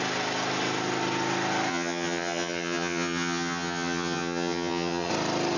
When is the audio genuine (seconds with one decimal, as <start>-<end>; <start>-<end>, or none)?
0.0-1.7; 5.1-5.6